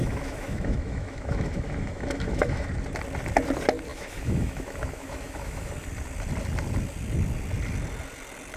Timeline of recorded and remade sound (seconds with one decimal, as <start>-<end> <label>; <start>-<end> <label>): 0.0-2.7 remade; 2.7-3.9 recorded; 3.9-5.7 remade; 5.7-8.6 recorded